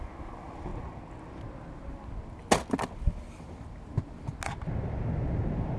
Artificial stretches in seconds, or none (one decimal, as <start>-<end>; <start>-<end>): none